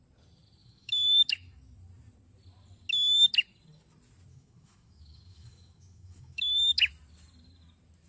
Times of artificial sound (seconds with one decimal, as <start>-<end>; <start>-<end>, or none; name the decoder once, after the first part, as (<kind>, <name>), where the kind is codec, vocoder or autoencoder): 0.6-1.6 (autoencoder, DAC-VAE); 4.3-6.9